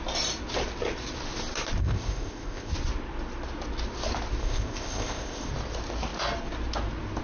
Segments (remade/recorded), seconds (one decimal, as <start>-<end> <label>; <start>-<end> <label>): 0.0-1.8 recorded; 1.8-2.7 remade; 2.7-4.4 recorded; 4.4-5.5 remade; 5.5-7.2 recorded